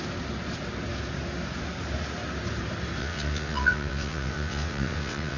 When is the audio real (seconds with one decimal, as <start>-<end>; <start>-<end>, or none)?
0.0-3.0